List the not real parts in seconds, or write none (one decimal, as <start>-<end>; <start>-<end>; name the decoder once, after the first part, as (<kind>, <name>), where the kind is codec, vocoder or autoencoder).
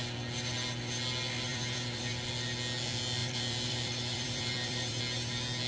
1.5-2.1 (vocoder, BigVGAN v2); 3.2-5.0